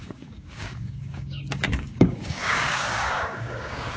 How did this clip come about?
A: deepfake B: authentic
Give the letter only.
A